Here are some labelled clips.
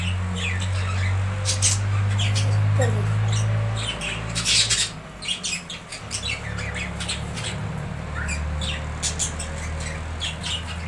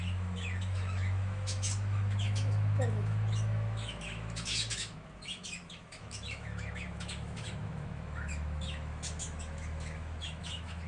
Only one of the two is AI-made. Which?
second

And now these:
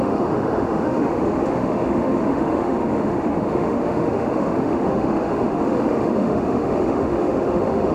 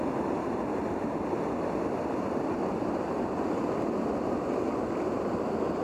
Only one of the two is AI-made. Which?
first